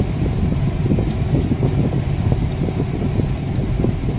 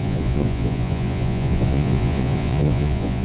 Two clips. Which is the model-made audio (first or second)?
second